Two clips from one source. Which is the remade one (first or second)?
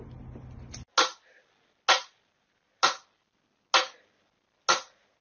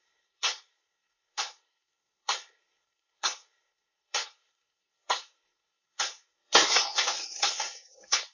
second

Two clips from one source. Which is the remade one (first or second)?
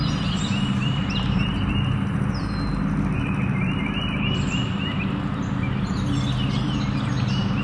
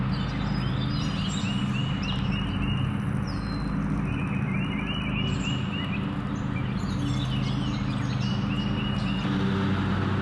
first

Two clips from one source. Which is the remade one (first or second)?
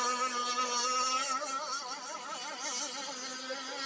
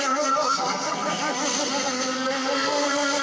second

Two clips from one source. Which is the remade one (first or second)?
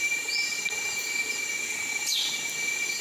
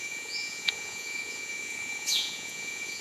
second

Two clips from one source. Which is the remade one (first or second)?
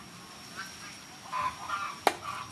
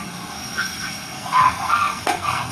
second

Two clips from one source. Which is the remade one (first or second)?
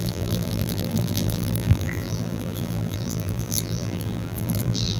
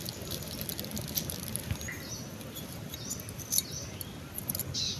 first